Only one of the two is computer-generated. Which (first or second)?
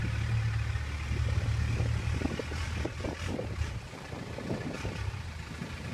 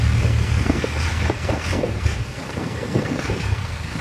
second